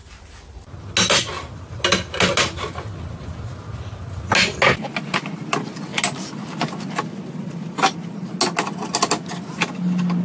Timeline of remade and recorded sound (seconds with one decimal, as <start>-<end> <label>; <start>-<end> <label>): 0.0-10.2 recorded